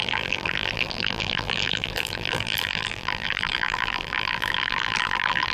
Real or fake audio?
fake